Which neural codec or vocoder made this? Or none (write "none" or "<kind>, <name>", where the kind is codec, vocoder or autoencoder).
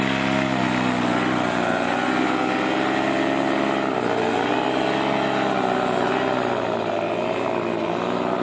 none